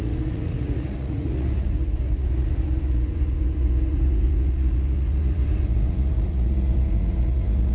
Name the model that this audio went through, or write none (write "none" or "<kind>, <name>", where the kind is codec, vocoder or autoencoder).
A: vocoder, Vocos